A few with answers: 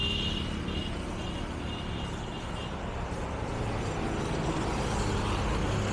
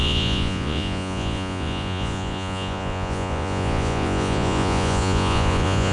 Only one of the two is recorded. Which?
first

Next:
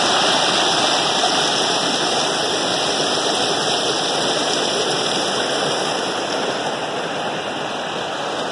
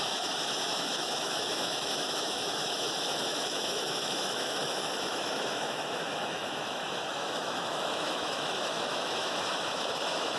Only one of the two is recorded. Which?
first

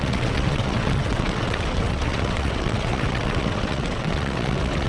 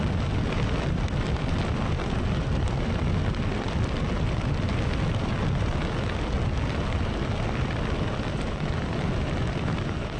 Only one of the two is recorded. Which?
second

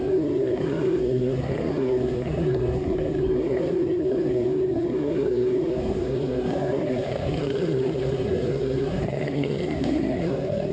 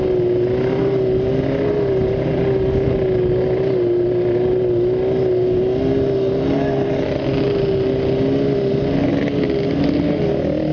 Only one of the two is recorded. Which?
second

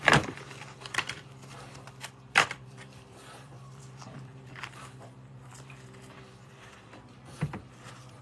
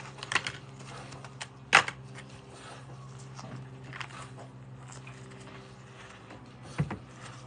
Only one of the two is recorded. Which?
second